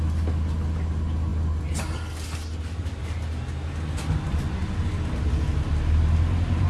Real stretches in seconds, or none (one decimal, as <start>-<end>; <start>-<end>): 0.0-6.7